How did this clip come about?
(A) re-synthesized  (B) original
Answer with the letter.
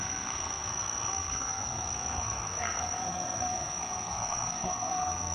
A